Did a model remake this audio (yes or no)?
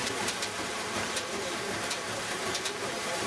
yes